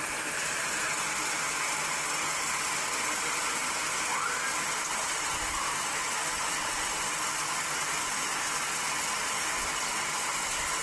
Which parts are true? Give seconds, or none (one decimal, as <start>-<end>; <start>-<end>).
0.0-10.8